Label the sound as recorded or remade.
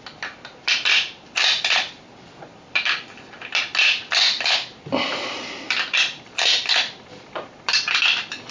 remade